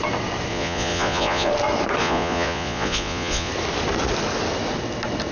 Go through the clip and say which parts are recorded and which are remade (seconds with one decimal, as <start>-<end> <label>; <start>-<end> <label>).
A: 0.0-0.5 recorded; 0.5-1.5 remade; 1.5-2.0 recorded; 2.0-3.5 remade; 3.5-5.3 recorded